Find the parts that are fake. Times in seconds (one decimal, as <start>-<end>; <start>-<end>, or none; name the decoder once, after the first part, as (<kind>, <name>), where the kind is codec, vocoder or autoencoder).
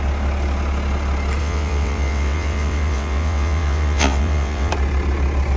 1.4-4.7 (vocoder, WaveNeXt)